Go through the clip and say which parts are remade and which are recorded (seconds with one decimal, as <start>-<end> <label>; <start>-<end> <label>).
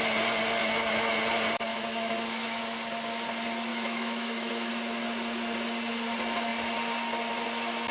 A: 0.0-0.6 recorded; 0.6-1.1 remade; 1.1-1.7 recorded; 1.7-2.6 remade; 2.6-3.7 recorded; 3.7-4.7 remade; 4.7-7.9 recorded